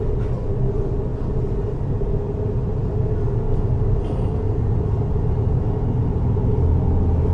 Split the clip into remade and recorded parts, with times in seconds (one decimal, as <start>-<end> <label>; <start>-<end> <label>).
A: 0.0-7.3 recorded